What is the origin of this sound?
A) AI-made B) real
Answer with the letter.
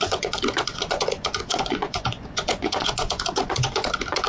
A